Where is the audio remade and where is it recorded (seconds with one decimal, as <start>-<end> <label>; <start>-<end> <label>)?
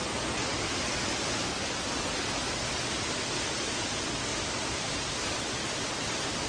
0.0-6.5 recorded